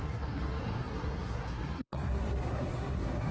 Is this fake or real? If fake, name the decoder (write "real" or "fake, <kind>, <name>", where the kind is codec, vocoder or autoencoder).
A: fake, codec, SNAC